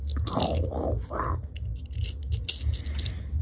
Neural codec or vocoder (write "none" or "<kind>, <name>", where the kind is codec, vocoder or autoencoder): none